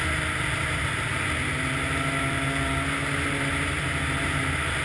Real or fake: real